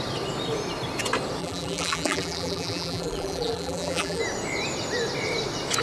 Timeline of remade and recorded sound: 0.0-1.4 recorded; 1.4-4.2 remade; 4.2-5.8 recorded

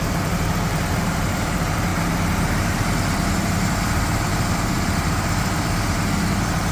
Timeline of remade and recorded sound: 0.0-6.7 remade

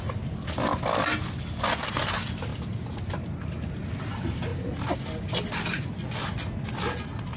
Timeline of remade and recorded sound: 0.0-7.4 recorded

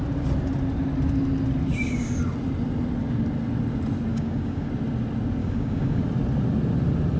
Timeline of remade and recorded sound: 0.0-4.1 recorded; 4.1-4.7 remade; 4.7-5.4 recorded; 5.4-6.0 remade; 6.0-7.2 recorded

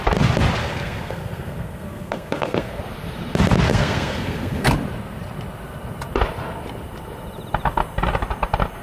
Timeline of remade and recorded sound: 0.0-0.6 recorded; 0.6-2.8 remade; 2.8-3.7 recorded; 3.7-4.7 remade; 4.7-8.8 recorded

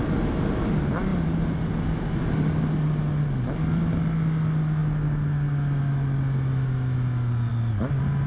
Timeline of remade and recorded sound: 0.0-8.3 recorded

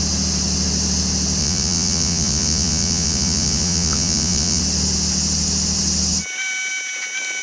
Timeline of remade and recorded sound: 0.0-1.4 recorded; 1.4-4.6 remade; 4.6-7.4 recorded